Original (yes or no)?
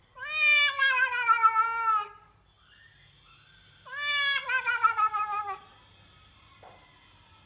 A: yes